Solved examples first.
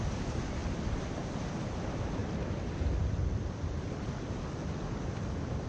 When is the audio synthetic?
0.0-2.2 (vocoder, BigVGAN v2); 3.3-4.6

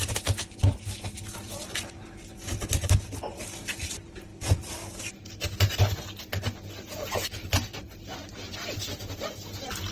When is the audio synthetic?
none